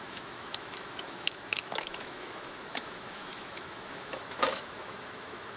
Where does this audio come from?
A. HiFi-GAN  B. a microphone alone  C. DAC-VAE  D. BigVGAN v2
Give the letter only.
C